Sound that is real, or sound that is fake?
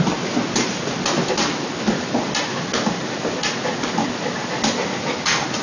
real